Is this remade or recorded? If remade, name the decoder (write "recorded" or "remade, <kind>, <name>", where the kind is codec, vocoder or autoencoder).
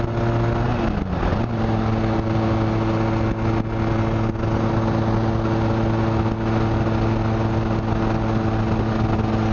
recorded